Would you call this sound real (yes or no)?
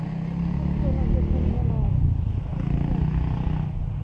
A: yes